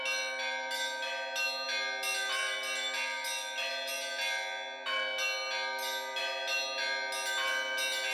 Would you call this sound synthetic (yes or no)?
no